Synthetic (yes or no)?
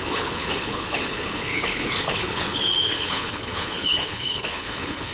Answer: yes